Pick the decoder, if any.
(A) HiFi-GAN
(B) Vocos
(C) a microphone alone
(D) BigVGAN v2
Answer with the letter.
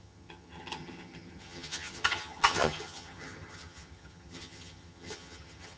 A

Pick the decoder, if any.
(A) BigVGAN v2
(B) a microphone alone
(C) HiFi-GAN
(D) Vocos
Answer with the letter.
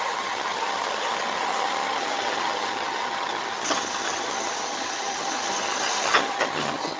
C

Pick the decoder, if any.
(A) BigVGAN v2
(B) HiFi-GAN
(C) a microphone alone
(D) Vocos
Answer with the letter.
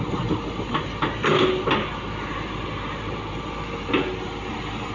C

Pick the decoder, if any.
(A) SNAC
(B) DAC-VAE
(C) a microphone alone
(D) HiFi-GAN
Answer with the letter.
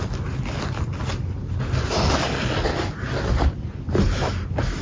C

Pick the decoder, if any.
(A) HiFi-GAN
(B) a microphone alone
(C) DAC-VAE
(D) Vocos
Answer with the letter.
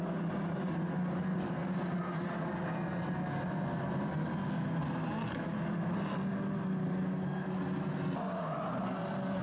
B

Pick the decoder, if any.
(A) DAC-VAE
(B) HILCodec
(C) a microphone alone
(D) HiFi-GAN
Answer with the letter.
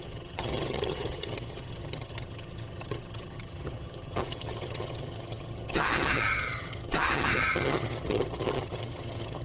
D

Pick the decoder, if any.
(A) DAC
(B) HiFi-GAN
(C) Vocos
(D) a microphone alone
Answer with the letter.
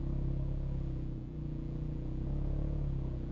D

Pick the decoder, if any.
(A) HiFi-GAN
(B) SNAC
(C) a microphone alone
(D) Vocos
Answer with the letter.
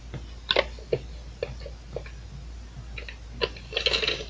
C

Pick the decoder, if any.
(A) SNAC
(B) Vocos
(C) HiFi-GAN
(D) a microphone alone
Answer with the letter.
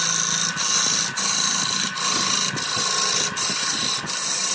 D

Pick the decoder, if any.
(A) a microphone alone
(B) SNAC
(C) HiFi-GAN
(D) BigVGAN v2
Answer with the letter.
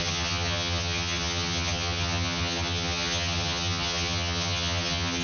C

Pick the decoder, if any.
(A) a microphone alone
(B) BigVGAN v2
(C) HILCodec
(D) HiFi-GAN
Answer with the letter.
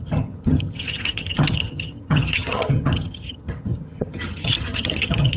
D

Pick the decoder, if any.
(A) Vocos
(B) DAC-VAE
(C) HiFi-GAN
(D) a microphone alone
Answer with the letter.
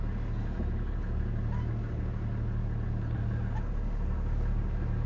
D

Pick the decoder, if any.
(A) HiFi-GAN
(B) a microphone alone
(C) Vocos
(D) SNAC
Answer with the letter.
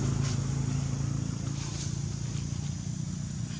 B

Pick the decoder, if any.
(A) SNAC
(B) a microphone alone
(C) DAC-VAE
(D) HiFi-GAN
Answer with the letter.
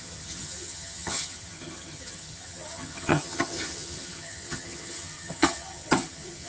D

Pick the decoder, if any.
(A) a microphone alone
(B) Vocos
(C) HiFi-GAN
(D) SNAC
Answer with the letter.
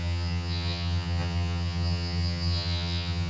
C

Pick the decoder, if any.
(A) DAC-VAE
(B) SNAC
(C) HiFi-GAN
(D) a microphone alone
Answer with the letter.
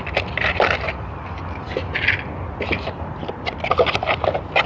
D